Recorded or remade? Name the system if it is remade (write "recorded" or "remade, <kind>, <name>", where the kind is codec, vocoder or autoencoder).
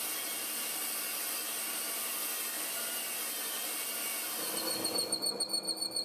recorded